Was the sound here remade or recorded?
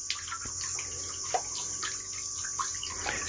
recorded